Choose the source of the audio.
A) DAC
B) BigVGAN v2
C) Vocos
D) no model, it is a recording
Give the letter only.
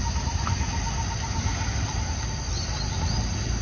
D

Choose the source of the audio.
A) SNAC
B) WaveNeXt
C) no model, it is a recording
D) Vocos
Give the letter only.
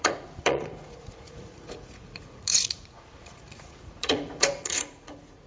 D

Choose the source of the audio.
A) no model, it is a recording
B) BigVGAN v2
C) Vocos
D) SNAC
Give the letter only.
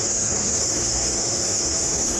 D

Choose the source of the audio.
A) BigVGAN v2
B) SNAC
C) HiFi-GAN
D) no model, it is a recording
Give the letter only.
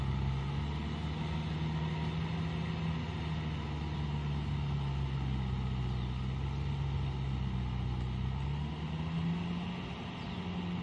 D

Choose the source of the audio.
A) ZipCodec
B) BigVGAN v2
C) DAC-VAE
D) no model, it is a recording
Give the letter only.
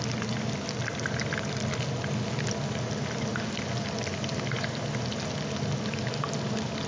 D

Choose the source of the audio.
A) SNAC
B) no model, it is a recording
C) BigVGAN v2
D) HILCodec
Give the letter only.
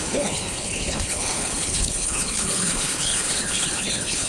D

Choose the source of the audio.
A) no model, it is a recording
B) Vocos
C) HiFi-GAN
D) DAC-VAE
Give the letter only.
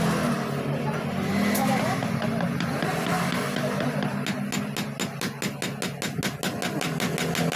A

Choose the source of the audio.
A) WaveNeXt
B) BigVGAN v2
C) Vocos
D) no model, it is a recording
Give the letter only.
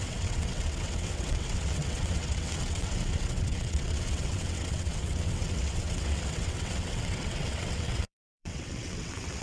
A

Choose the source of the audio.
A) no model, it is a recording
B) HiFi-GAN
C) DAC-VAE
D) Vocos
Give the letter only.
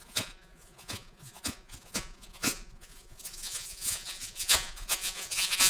D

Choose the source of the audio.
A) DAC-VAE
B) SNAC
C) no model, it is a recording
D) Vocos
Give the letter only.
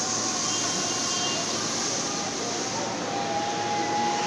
C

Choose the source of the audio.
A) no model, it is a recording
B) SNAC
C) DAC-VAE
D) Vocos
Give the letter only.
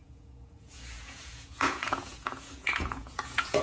D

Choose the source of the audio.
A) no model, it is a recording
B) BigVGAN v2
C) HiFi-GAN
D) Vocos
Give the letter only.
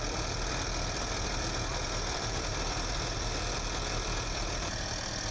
B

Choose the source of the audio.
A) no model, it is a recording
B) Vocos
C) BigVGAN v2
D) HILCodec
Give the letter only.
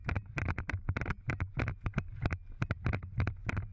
A